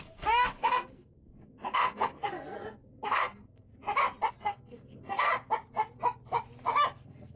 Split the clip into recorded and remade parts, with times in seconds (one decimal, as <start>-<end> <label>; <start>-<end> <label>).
0.0-3.7 remade; 3.7-4.3 recorded; 4.3-5.3 remade; 5.3-7.0 recorded; 7.0-7.4 remade